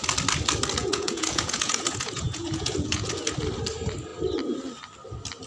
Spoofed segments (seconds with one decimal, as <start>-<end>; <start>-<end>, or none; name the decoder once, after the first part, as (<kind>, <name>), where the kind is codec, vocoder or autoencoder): 0.8-3.1 (vocoder, Vocos)